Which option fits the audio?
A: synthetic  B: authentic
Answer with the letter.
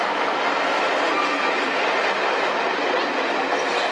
B